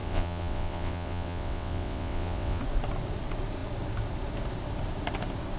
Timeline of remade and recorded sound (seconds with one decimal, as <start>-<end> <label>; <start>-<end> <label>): 0.0-2.6 remade; 2.6-5.6 recorded